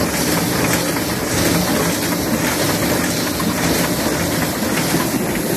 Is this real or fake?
real